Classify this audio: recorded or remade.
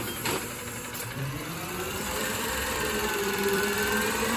remade